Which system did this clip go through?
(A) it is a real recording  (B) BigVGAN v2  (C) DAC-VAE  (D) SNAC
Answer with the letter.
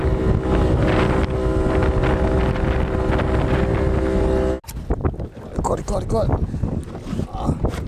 A